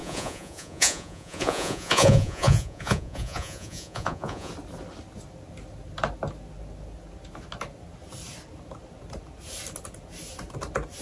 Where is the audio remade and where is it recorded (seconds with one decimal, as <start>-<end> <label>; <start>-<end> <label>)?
0.0-4.5 remade; 4.5-11.0 recorded